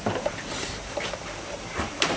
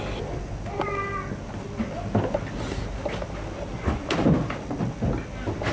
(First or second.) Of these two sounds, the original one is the second